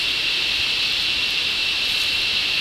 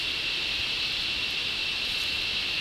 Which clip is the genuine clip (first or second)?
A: second